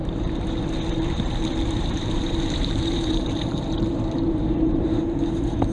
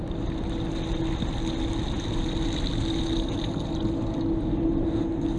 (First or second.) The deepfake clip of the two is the first